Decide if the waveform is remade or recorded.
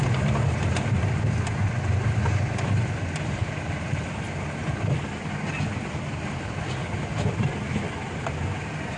recorded